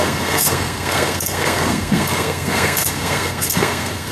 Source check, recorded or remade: remade